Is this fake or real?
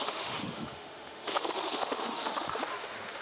fake